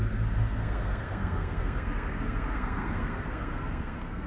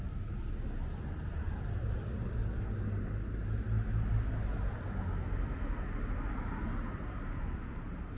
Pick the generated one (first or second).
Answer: first